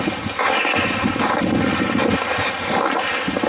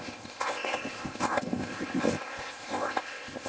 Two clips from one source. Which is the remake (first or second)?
second